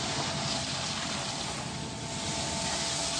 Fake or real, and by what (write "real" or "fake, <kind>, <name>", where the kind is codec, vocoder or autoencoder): real